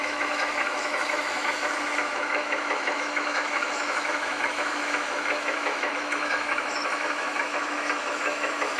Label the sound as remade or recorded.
remade